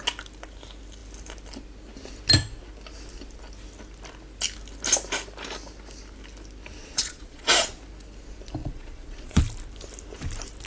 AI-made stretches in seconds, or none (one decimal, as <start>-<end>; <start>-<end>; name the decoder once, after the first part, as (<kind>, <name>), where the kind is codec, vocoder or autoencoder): 6.8-7.8 (vocoder, Vocos); 8.6-9.4